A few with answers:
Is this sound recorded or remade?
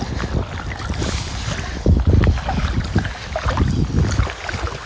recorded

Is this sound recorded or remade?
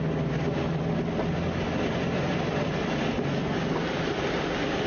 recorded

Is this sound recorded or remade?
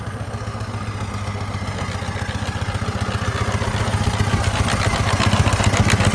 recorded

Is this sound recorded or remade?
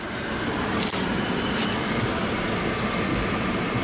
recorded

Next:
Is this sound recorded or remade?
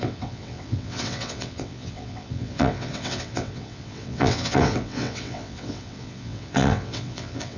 remade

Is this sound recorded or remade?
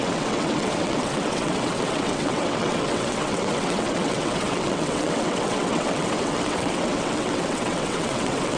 remade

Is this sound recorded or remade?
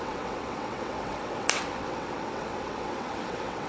remade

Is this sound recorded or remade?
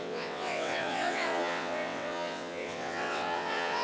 remade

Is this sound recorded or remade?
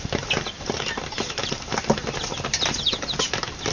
recorded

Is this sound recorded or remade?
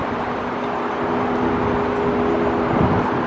recorded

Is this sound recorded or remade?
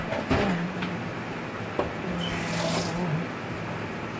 recorded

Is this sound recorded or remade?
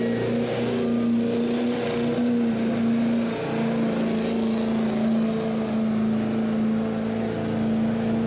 recorded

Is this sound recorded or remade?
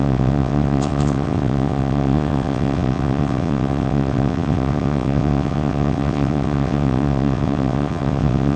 remade